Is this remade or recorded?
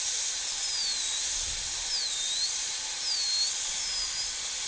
recorded